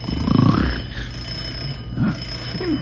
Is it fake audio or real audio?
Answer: real